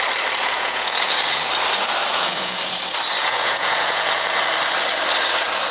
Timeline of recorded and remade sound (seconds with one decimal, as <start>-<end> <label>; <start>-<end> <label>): 0.0-0.4 recorded; 0.4-1.5 remade; 1.5-2.1 recorded; 2.1-2.6 remade; 2.6-3.2 recorded; 3.2-4.5 remade; 4.5-5.7 recorded